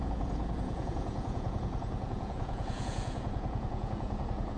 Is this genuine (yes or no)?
no